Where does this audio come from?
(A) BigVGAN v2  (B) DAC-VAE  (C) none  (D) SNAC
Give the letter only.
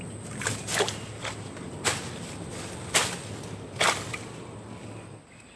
C